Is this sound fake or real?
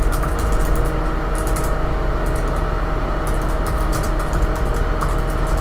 real